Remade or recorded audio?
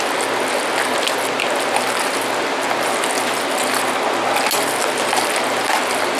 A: recorded